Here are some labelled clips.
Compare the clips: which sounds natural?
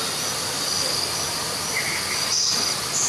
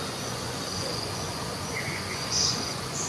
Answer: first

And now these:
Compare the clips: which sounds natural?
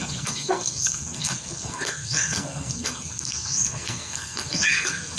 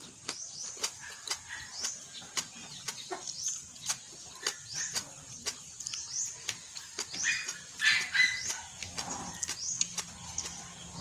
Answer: second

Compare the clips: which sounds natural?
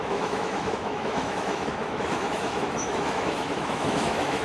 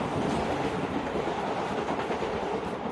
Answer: second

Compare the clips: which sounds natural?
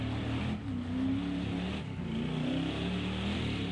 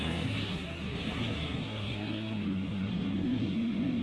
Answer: first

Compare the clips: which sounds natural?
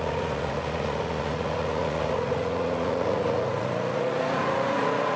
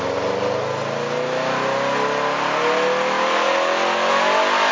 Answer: second